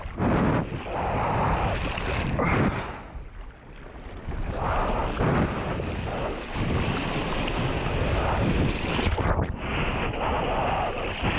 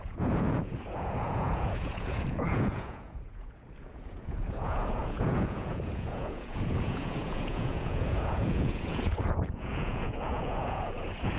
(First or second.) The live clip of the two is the first